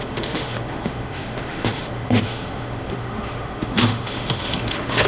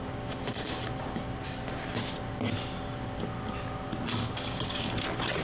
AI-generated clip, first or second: first